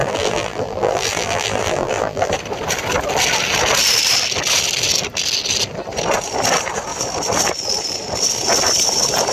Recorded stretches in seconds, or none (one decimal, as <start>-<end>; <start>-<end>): 2.3-9.3